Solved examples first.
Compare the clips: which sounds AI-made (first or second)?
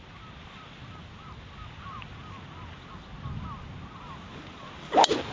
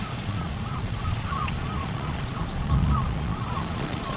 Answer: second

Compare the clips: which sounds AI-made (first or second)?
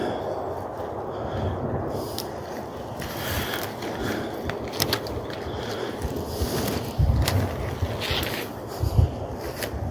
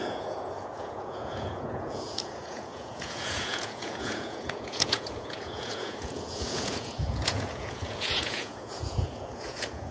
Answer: second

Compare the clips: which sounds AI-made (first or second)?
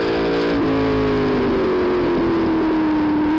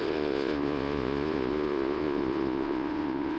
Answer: second